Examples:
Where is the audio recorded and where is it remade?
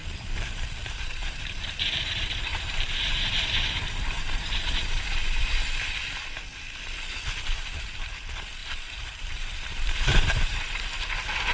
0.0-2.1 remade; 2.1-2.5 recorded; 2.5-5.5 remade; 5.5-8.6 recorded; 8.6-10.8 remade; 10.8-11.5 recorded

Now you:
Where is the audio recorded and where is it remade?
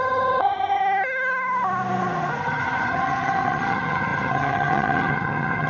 0.0-0.8 remade; 0.8-2.4 recorded; 2.4-5.7 remade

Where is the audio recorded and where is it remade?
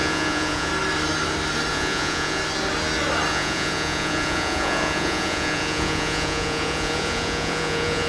0.0-0.7 remade; 0.7-1.7 recorded; 1.7-2.4 remade; 2.4-3.3 recorded; 3.3-8.1 remade